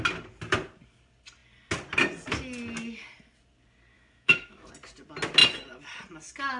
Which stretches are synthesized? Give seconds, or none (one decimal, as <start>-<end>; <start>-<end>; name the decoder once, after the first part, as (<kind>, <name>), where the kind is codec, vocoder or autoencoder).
3.9-4.7 (autoencoder, DAC-VAE)